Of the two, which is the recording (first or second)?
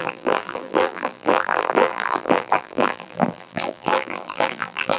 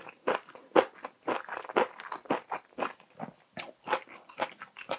second